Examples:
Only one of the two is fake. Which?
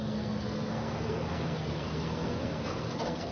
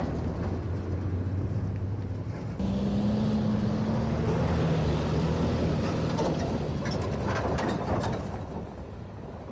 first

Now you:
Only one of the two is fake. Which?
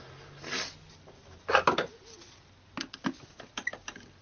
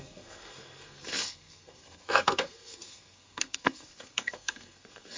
second